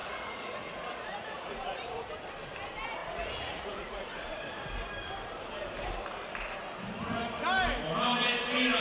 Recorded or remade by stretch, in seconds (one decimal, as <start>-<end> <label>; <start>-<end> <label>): 0.0-2.1 remade; 2.1-3.0 recorded; 3.0-4.4 remade; 4.4-8.8 recorded